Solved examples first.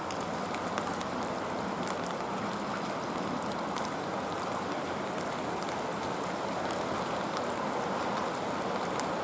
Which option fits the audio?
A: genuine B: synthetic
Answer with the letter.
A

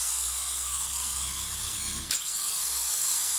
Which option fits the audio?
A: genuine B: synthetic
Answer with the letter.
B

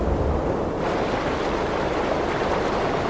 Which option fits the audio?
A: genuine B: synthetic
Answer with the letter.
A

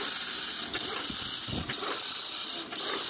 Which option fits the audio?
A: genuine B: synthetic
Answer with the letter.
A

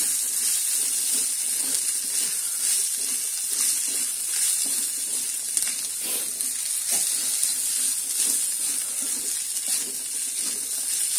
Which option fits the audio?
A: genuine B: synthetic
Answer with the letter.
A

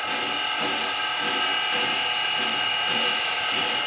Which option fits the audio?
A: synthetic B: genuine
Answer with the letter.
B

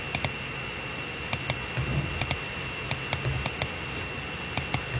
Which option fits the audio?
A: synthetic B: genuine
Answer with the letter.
B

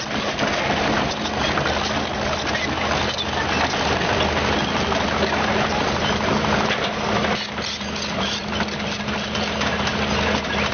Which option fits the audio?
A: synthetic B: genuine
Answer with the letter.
B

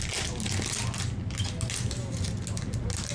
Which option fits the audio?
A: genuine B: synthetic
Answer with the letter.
A